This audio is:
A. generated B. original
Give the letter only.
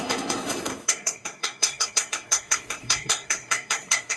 A